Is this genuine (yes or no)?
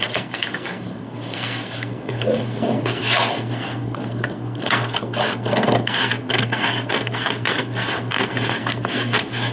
no